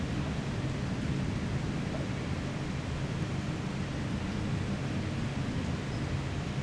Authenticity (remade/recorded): recorded